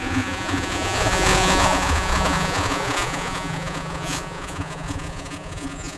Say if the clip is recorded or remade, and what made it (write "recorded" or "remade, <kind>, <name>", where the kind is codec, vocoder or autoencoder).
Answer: remade, vocoder, Vocos